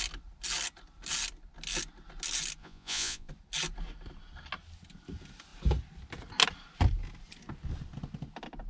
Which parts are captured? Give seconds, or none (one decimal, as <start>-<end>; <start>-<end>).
0.0-2.6; 3.3-8.7